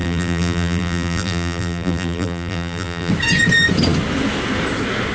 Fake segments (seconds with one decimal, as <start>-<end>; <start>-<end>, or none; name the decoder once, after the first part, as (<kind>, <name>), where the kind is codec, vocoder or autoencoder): 0.0-3.1 (vocoder, BigVGAN v2)